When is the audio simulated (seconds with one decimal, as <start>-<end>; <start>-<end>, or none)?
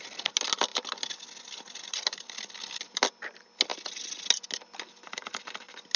none